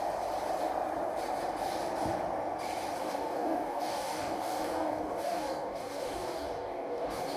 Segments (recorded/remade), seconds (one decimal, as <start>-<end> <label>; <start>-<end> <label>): 0.0-3.0 recorded; 3.0-7.4 remade

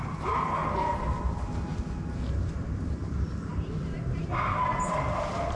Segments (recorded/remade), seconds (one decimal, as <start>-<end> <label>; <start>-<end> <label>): 0.0-5.5 recorded

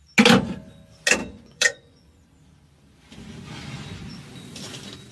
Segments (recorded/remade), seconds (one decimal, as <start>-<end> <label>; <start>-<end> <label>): 0.0-1.2 recorded; 1.2-2.0 remade; 2.0-5.1 recorded

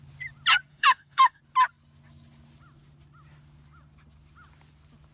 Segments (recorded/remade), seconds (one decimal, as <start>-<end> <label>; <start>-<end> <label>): 0.0-0.7 recorded; 0.7-1.4 remade; 1.4-5.1 recorded

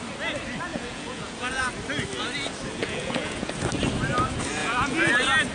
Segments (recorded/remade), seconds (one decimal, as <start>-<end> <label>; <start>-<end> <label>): 0.0-0.7 recorded; 0.7-1.7 remade; 1.7-2.8 recorded; 2.8-3.5 remade; 3.5-4.6 recorded; 4.6-5.1 remade; 5.1-5.5 recorded

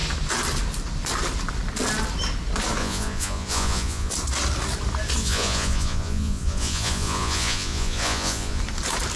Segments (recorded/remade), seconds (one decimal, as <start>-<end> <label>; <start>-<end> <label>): 0.0-2.8 recorded; 2.8-4.1 remade; 4.1-5.2 recorded; 5.2-8.6 remade; 8.6-9.2 recorded